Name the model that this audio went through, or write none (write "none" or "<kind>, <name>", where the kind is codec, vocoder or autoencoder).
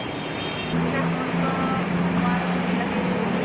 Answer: none